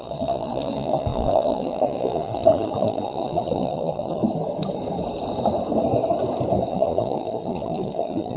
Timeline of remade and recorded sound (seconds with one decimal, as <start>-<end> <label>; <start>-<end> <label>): 0.0-4.2 remade; 4.2-6.7 recorded; 6.7-8.4 remade